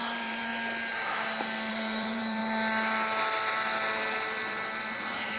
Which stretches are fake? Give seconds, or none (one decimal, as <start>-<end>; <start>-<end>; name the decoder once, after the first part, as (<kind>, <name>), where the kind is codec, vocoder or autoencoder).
0.0-0.5 (vocoder, BigVGAN v2); 1.7-2.4; 5.0-5.4